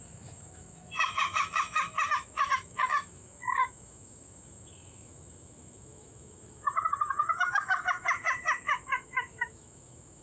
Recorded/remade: remade